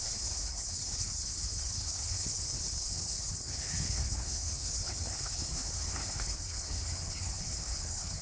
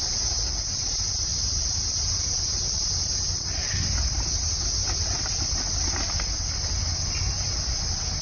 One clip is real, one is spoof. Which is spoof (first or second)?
first